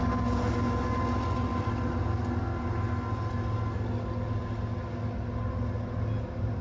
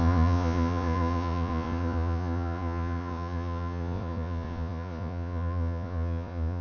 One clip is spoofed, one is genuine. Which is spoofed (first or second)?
second